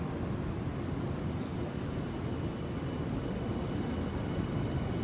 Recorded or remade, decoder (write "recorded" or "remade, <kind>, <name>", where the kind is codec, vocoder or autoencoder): recorded